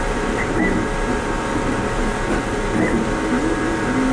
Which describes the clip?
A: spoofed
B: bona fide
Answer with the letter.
B